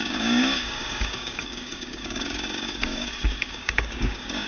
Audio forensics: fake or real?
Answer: fake